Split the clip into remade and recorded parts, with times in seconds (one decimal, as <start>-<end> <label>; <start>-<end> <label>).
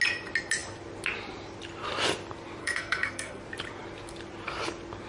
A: 0.0-2.6 recorded; 2.6-3.4 remade; 3.4-5.1 recorded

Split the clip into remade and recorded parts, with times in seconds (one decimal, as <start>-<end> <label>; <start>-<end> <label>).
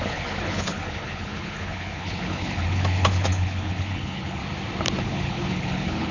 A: 0.0-4.4 remade; 4.4-5.0 recorded; 5.0-6.1 remade